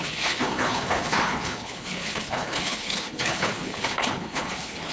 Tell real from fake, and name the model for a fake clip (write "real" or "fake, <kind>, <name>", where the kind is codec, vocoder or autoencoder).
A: fake, codec, HILCodec